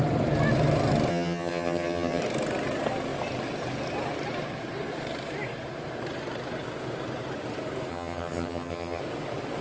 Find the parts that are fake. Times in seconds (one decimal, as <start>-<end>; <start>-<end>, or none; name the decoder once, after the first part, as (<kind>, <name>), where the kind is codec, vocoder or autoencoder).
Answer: 1.1-2.2 (vocoder, HiFi-GAN); 7.9-9.0